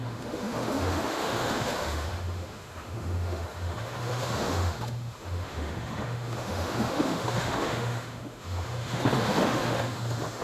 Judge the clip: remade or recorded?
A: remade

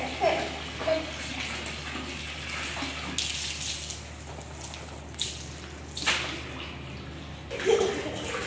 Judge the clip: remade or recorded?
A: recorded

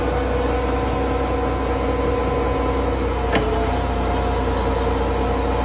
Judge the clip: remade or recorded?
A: recorded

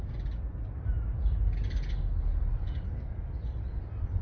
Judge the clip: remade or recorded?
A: recorded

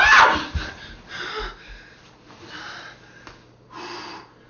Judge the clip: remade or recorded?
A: recorded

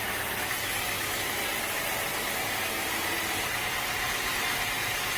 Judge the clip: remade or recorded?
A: recorded